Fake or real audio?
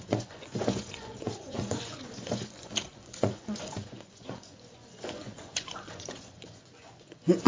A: fake